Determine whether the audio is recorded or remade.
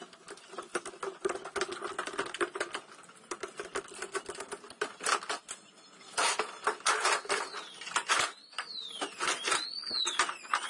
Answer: recorded